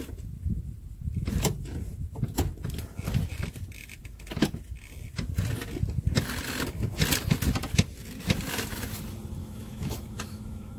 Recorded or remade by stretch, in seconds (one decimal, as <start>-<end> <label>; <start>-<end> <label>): 0.0-9.4 recorded; 9.4-10.8 remade